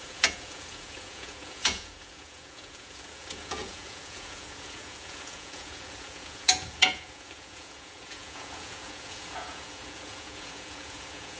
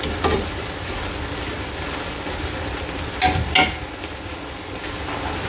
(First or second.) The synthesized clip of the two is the first